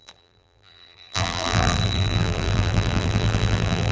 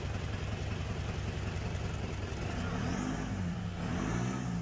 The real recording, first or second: second